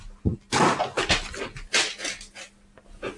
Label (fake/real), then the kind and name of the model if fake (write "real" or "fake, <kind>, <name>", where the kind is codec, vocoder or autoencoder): real